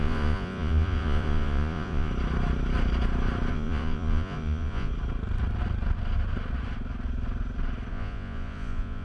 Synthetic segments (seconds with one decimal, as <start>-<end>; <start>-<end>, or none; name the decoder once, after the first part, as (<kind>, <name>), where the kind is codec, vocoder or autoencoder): 0.0-2.1 (vocoder, Vocos); 3.5-4.9; 7.9-9.0